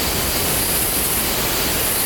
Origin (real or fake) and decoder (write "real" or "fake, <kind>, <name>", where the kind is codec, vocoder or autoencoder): real